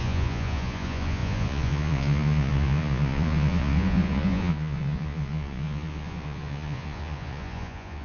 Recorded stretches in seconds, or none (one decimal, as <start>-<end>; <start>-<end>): none